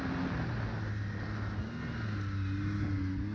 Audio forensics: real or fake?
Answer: real